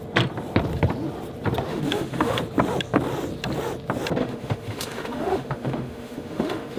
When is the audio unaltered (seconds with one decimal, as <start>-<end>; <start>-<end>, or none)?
0.0-1.7; 2.4-4.2